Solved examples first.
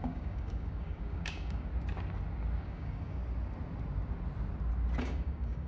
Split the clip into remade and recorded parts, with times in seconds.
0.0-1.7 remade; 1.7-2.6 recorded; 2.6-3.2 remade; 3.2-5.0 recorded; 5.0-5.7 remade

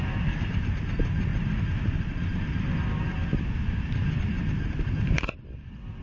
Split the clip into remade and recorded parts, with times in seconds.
0.0-6.0 recorded

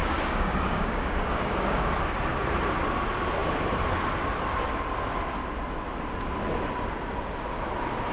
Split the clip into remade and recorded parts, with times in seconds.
0.0-2.0 remade; 2.0-8.1 recorded

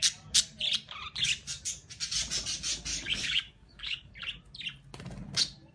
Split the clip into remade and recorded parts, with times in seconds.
0.0-2.9 recorded; 2.9-4.1 remade; 4.1-5.7 recorded

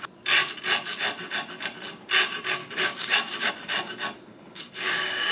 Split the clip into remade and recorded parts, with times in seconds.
0.0-2.6 recorded; 2.6-3.5 remade; 3.5-4.3 recorded; 4.3-5.3 remade

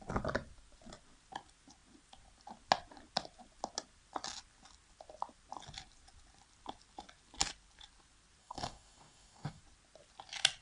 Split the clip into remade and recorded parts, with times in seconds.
0.0-8.4 recorded; 8.4-9.6 remade; 9.6-10.6 recorded